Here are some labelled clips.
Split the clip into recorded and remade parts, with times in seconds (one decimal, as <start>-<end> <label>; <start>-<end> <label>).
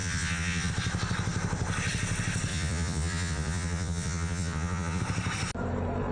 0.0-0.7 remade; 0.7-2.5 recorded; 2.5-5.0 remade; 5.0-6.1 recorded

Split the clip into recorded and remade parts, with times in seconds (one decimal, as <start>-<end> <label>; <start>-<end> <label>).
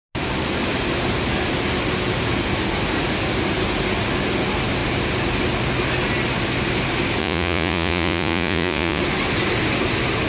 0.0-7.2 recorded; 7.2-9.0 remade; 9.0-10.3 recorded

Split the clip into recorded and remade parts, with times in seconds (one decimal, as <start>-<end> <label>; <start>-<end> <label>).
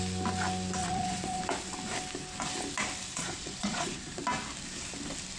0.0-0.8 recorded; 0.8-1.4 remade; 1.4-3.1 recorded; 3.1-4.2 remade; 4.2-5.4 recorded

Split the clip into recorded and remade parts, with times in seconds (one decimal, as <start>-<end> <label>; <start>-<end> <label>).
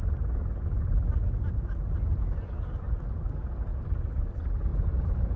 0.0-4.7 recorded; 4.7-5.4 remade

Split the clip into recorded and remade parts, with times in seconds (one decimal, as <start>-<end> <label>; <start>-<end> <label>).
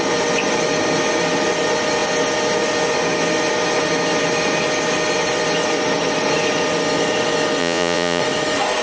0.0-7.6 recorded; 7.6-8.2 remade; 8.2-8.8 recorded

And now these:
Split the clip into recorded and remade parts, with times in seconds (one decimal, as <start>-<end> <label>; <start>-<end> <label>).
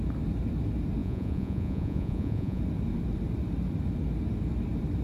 0.0-1.0 recorded; 1.0-2.6 remade; 2.6-5.0 recorded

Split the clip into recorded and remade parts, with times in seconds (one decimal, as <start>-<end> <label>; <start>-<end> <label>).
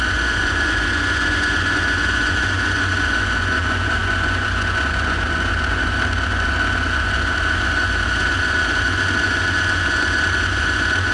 0.0-11.1 remade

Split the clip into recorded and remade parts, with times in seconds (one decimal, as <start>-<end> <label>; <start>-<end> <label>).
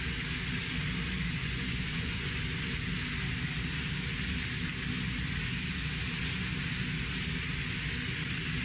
0.0-1.4 recorded; 1.4-2.4 remade; 2.4-8.6 recorded